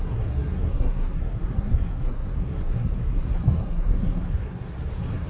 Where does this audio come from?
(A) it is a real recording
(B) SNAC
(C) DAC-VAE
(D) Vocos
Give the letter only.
B